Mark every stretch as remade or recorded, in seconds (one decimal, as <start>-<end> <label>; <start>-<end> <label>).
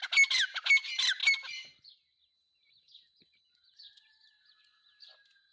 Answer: 0.0-5.5 recorded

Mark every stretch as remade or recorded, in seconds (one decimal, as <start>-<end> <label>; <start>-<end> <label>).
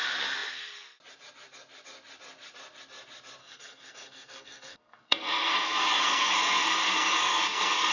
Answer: 0.0-3.4 recorded; 3.4-7.9 remade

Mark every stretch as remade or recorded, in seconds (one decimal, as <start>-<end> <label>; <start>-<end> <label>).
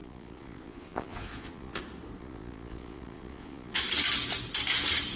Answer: 0.0-1.8 remade; 1.8-2.2 recorded; 2.2-3.8 remade; 3.8-5.2 recorded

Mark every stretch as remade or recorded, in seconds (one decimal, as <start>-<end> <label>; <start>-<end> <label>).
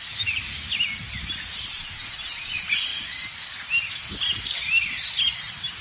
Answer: 0.0-5.8 recorded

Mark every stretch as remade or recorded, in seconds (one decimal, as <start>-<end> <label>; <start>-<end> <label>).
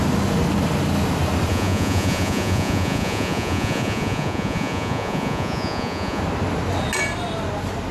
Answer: 0.0-1.5 recorded; 1.5-6.2 remade; 6.2-7.9 recorded